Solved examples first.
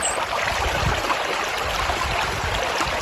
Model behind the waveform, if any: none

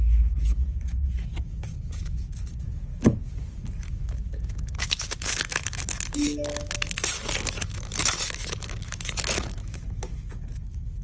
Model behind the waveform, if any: autoencoder, DAC-VAE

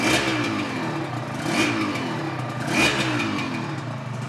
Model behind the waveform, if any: none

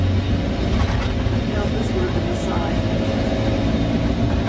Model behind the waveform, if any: none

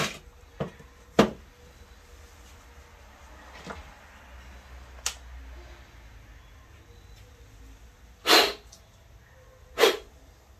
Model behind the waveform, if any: none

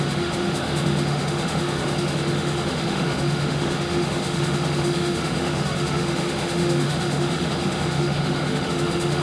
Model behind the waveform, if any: autoencoder, DAC-VAE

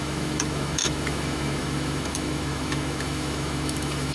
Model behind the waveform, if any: autoencoder, DAC-VAE